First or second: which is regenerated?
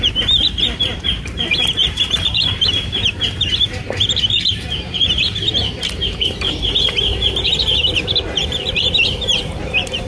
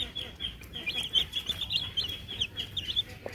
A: first